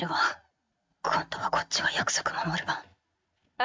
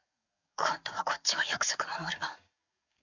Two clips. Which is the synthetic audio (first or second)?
second